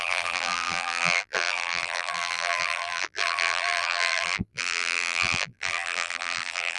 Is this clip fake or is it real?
fake